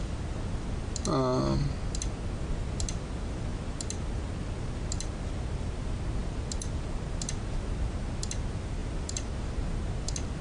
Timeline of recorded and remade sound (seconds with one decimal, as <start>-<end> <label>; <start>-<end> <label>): 0.0-8.8 recorded; 8.8-9.7 remade; 9.7-10.4 recorded